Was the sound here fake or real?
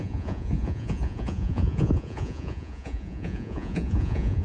fake